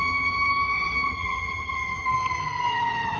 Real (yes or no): no